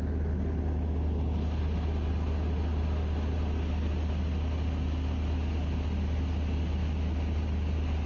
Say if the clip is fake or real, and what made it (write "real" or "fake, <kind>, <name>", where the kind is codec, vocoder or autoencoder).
real